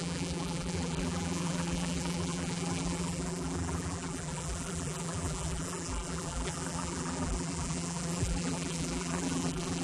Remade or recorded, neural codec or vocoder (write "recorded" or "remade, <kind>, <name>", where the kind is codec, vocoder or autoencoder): remade, vocoder, BigVGAN v2